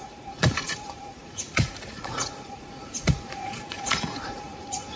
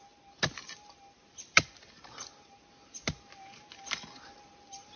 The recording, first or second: second